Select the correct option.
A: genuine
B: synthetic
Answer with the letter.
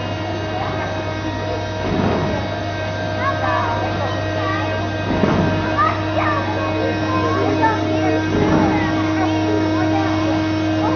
A